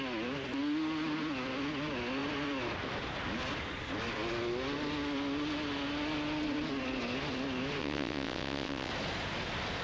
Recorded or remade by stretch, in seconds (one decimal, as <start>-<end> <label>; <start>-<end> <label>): 0.0-7.8 recorded; 7.8-8.9 remade; 8.9-9.8 recorded